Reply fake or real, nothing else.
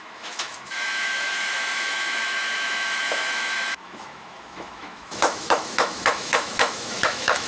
fake